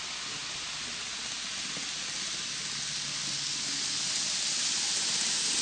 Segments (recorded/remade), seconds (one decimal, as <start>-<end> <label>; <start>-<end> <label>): 0.0-5.6 recorded